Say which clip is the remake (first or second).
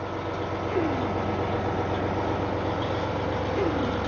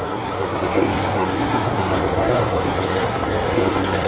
second